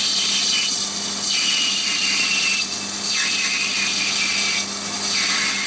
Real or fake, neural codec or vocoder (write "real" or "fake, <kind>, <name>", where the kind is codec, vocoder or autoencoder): real